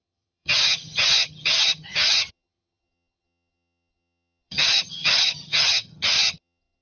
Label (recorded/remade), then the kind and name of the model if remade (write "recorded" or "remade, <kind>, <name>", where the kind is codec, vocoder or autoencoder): remade, vocoder, HiFi-GAN